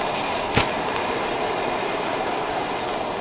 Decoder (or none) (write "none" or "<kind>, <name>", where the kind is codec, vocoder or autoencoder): none